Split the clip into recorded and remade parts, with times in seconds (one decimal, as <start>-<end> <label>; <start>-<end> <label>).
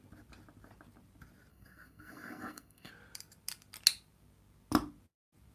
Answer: 0.0-1.5 recorded; 1.5-2.9 remade; 2.9-5.5 recorded